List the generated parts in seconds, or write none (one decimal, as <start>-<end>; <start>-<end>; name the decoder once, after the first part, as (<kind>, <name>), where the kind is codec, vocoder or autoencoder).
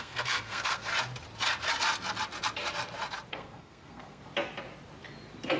0.0-0.9 (codec, SNAC); 3.3-4.2